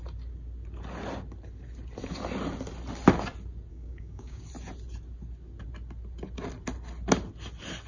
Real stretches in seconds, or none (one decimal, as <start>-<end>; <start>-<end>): 0.0-3.7; 4.4-7.9